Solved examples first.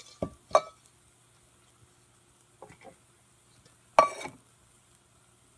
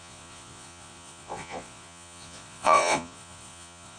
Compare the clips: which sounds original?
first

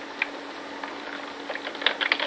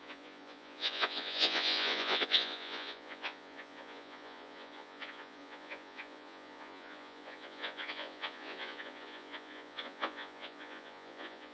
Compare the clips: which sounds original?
first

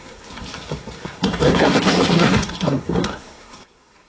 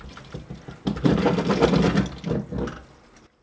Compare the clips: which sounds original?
second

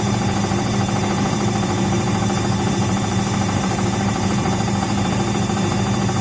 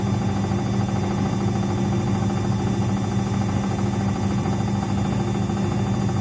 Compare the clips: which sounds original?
second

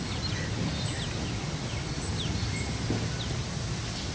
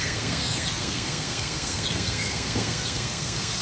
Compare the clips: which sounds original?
first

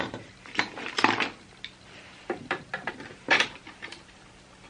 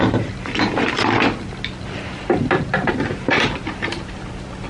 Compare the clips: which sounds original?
second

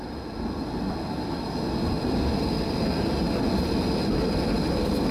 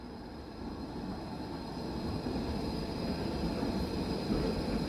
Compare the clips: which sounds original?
first